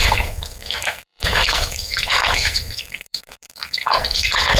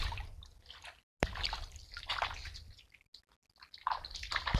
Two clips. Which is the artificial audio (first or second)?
first